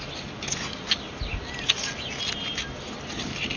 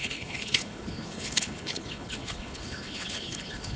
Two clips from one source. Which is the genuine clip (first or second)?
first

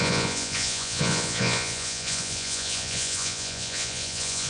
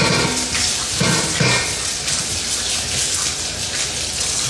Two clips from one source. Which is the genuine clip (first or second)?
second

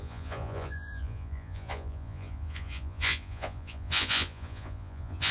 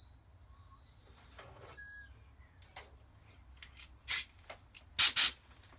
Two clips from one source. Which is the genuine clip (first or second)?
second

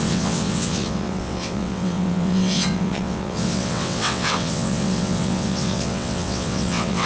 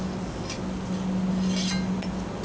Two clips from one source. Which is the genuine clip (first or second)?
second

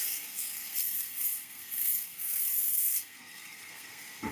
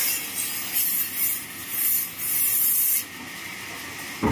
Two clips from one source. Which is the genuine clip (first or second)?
second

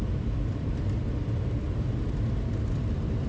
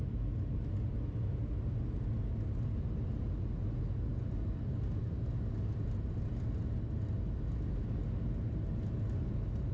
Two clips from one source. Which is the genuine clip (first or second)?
second